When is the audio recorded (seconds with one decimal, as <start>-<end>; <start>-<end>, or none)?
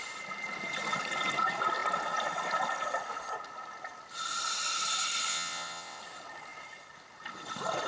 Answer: 0.0-5.3; 6.0-7.9